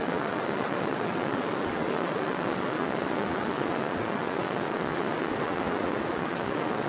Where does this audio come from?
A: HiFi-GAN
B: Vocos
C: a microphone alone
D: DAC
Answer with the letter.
B